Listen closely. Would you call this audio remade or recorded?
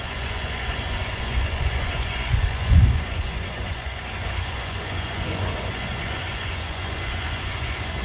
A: remade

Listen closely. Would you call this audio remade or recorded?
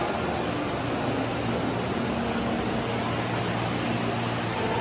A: recorded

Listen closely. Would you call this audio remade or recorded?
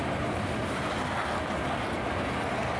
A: recorded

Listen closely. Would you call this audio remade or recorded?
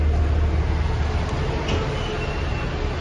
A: recorded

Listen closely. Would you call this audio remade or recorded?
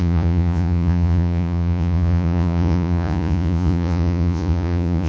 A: remade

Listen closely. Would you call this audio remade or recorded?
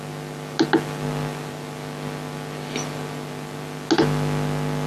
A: recorded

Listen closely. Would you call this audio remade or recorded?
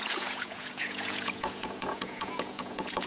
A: remade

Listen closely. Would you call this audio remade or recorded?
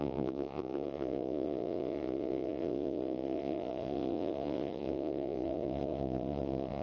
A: remade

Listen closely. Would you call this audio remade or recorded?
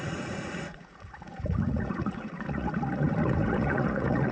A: remade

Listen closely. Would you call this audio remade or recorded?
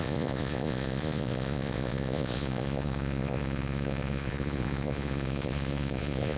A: remade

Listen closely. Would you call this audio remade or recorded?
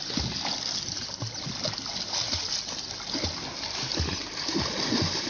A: recorded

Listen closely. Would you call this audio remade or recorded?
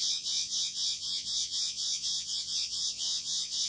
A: remade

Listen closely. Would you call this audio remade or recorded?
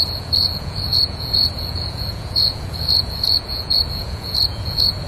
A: remade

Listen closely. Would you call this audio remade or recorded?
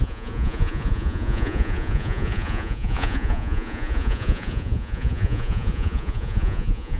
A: remade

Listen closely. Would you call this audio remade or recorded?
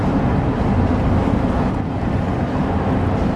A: recorded